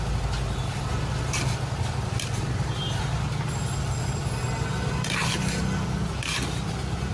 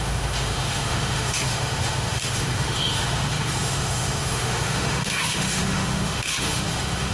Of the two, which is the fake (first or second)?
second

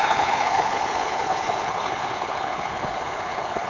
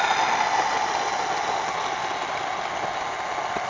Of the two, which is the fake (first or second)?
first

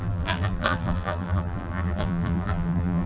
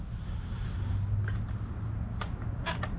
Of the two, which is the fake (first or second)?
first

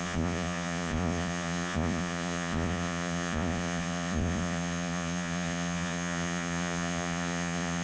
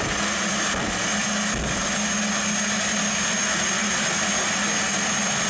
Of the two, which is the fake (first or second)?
first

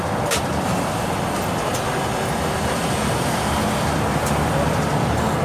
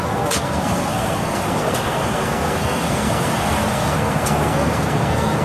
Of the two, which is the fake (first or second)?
second